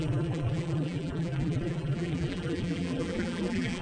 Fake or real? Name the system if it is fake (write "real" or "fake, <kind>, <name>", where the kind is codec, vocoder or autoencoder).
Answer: fake, vocoder, BigVGAN v2